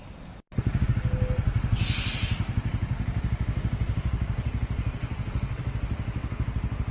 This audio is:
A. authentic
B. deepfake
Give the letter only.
A